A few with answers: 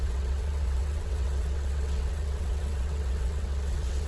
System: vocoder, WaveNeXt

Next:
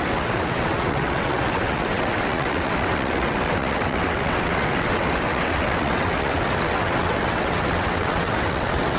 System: vocoder, WaveNeXt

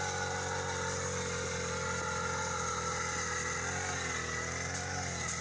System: none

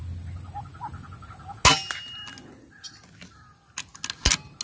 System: none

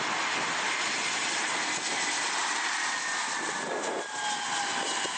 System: none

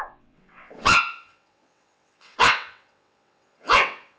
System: vocoder, WaveNeXt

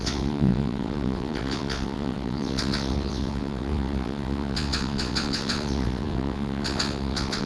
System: vocoder, WaveNeXt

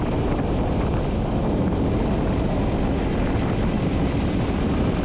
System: none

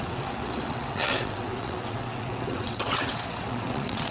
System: vocoder, WaveNeXt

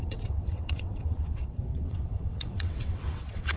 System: vocoder, WaveNeXt